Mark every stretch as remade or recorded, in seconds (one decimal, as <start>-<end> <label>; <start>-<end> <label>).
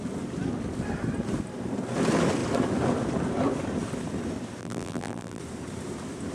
0.0-4.6 recorded; 4.6-5.4 remade; 5.4-6.3 recorded